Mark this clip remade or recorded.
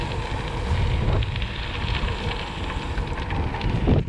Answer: recorded